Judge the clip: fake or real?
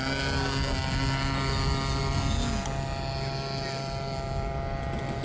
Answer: real